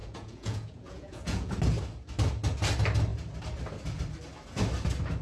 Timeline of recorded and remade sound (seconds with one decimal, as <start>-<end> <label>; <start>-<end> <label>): 0.0-1.5 remade; 1.5-5.2 recorded